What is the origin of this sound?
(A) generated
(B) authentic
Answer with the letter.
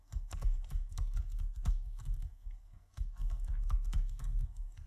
A